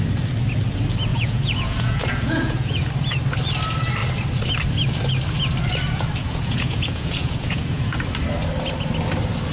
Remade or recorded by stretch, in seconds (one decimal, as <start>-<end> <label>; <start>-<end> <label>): 0.0-1.1 recorded; 1.1-2.9 remade; 2.9-6.2 recorded; 6.2-8.0 remade; 8.0-9.5 recorded

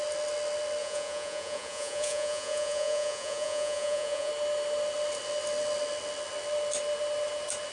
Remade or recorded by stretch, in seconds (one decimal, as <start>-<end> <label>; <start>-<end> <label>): 0.0-0.8 recorded; 0.8-4.3 remade; 4.3-7.7 recorded

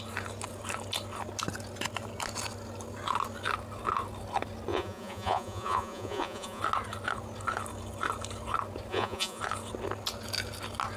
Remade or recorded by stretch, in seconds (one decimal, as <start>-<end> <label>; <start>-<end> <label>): 0.0-4.7 recorded; 4.7-6.6 remade; 6.6-8.9 recorded; 8.9-9.4 remade; 9.4-11.0 recorded

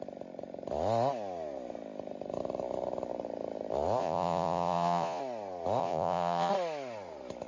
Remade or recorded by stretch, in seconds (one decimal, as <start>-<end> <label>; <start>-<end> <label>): 0.0-4.0 recorded; 4.0-5.2 remade; 5.2-5.8 recorded; 5.8-6.5 remade; 6.5-7.5 recorded

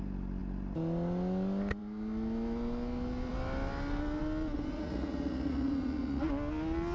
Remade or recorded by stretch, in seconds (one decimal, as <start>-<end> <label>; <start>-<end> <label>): 0.0-4.7 recorded; 4.7-6.3 remade; 6.3-6.9 recorded